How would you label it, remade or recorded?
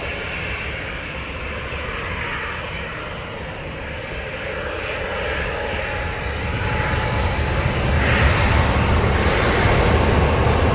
recorded